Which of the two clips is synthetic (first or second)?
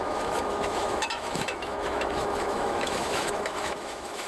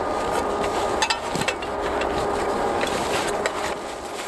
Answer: first